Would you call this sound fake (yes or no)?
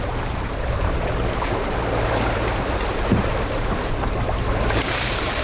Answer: yes